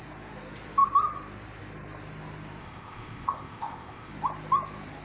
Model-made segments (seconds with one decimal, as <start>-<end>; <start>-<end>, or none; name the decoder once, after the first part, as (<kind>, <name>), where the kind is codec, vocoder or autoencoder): 2.6-4.1 (codec, ZipCodec)